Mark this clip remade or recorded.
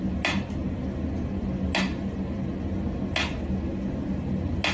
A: recorded